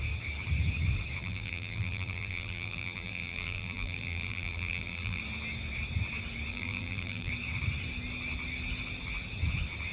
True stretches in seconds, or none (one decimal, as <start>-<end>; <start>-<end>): 0.0-1.2; 5.2-6.5; 7.3-9.9